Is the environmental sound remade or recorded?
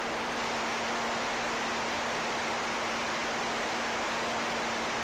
recorded